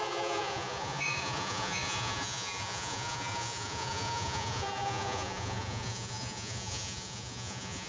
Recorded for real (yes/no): no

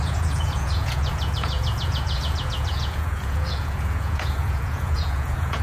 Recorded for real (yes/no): no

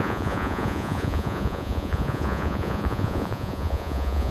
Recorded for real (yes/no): no